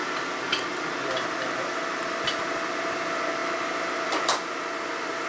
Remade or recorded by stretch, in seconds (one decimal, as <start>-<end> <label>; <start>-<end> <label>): 0.0-5.3 recorded